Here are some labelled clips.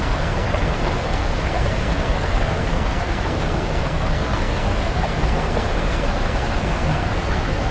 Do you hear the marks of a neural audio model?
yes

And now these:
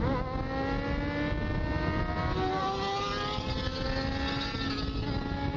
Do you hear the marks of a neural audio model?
no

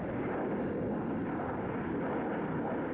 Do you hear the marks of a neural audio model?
no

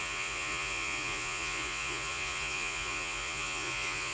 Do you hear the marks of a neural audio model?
yes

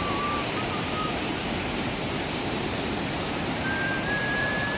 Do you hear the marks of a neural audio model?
yes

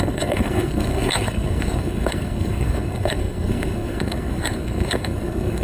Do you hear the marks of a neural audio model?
yes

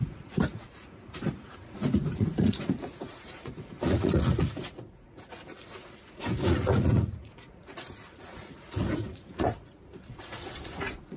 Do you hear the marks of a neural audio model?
yes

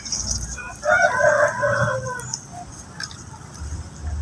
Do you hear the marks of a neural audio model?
no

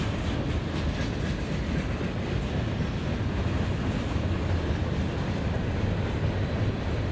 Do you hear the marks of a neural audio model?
no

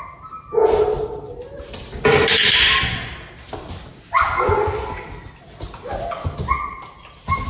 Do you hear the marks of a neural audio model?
no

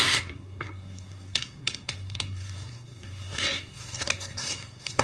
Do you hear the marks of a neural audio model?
yes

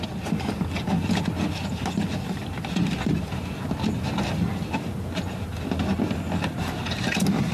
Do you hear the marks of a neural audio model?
no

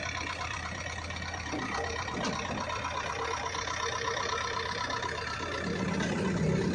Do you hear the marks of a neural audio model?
no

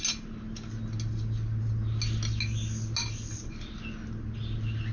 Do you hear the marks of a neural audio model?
no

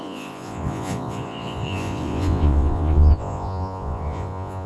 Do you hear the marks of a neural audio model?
yes